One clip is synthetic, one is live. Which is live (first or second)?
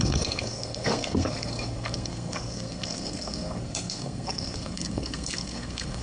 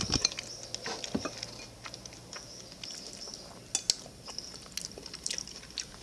second